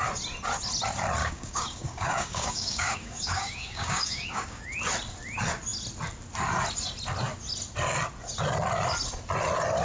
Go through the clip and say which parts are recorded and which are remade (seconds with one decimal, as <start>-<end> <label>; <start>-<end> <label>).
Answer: 0.0-1.2 recorded; 1.2-4.6 remade; 4.6-9.8 recorded